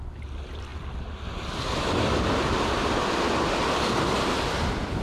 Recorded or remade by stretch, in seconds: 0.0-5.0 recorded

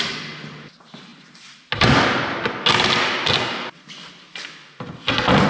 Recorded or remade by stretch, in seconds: 0.0-5.5 recorded

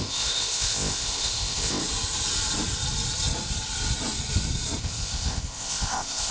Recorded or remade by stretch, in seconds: 0.0-1.8 remade; 1.8-4.8 recorded; 4.8-6.3 remade

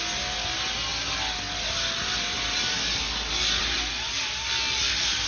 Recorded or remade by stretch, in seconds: 0.0-5.3 recorded

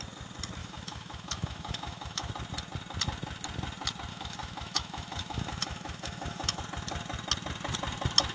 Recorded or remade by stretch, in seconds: 0.0-0.6 recorded; 0.6-2.3 remade; 2.3-4.1 recorded; 4.1-6.6 remade; 6.6-8.3 recorded

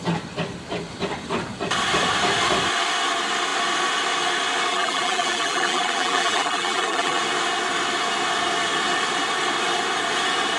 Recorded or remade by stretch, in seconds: 0.0-4.7 recorded; 4.7-7.2 remade; 7.2-10.6 recorded

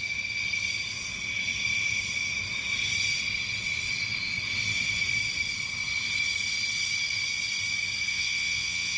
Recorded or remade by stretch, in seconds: 0.0-8.1 recorded; 8.1-9.0 remade

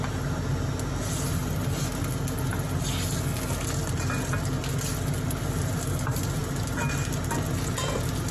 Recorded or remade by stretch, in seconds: 0.0-8.3 recorded